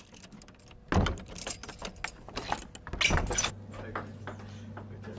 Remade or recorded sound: recorded